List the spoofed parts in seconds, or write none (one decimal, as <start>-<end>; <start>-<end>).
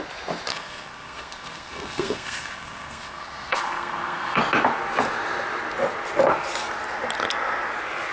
0.5-4.4